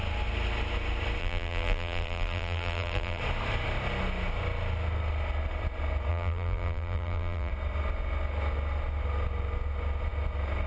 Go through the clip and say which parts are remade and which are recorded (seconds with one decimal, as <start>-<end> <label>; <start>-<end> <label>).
0.0-1.2 recorded; 1.2-3.2 remade; 3.2-6.1 recorded; 6.1-7.5 remade; 7.5-10.7 recorded

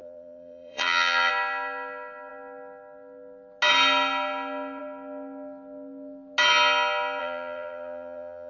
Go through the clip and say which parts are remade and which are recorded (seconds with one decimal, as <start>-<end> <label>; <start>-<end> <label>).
0.0-1.3 remade; 1.3-7.2 recorded; 7.2-8.5 remade

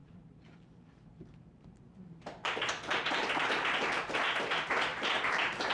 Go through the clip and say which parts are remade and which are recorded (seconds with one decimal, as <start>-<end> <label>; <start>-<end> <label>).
0.0-2.7 remade; 2.7-3.2 recorded; 3.2-4.2 remade; 4.2-4.9 recorded; 4.9-5.7 remade

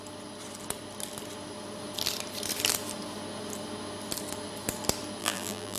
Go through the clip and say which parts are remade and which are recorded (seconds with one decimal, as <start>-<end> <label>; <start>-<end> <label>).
0.0-5.2 recorded; 5.2-5.8 remade

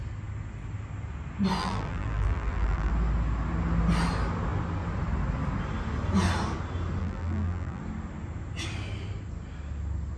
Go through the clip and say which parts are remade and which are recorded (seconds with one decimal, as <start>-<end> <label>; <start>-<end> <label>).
0.0-1.6 recorded; 1.6-2.9 remade; 2.9-7.0 recorded; 7.0-7.8 remade; 7.8-10.2 recorded

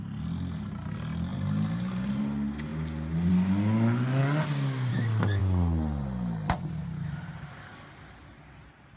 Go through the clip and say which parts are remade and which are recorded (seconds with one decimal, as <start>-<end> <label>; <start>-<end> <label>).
0.0-1.3 recorded; 1.3-2.2 remade; 2.2-9.0 recorded

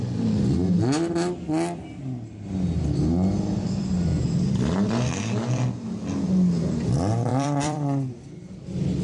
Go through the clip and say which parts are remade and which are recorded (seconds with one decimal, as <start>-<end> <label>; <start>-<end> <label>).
0.0-7.3 recorded; 7.3-8.6 remade; 8.6-9.0 recorded